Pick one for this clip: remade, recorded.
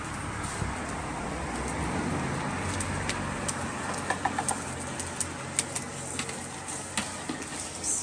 recorded